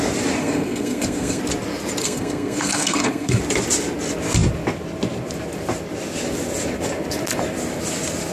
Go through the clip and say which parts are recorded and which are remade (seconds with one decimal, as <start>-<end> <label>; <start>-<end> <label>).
0.0-0.4 recorded; 0.4-1.4 remade; 1.4-2.0 recorded; 2.0-3.4 remade; 3.4-8.3 recorded